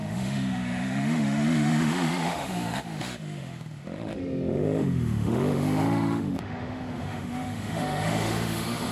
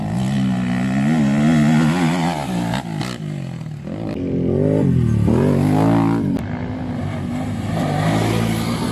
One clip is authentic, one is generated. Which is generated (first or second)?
first